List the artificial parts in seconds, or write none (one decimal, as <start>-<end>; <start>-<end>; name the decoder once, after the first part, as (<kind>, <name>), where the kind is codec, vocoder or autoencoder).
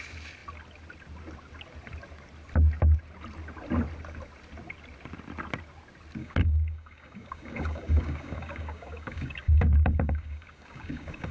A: 6.2-11.3 (codec, DAC)